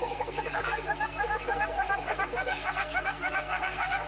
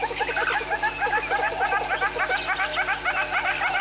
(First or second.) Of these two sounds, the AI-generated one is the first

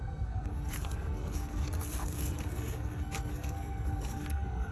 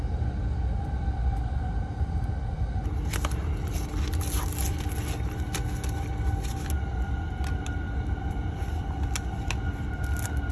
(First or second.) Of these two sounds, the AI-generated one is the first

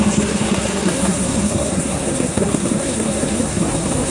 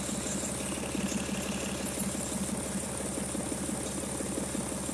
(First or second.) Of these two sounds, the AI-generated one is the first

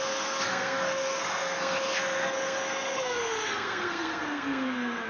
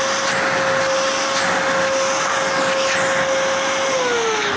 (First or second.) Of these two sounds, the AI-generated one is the first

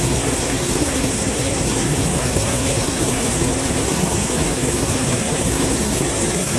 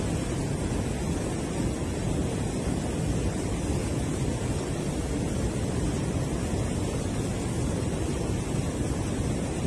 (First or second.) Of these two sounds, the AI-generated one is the first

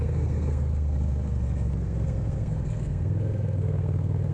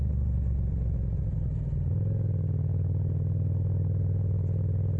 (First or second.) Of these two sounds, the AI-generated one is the first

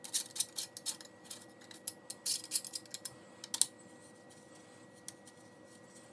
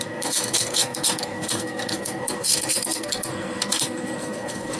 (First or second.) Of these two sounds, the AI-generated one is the second